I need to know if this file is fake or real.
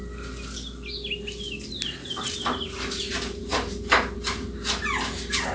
real